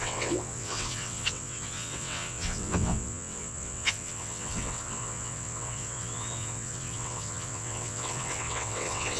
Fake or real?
fake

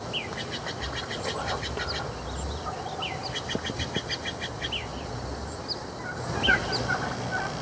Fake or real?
real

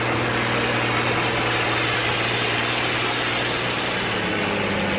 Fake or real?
real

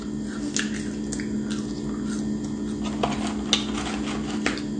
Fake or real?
real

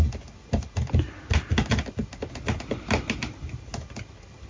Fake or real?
real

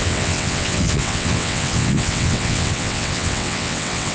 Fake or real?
fake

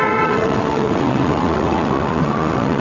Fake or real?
fake